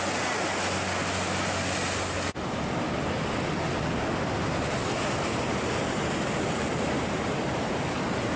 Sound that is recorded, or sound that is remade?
recorded